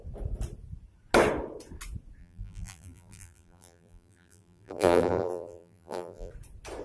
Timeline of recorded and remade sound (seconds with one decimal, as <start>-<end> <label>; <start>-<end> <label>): 0.0-2.2 recorded; 2.2-6.3 remade; 6.3-6.8 recorded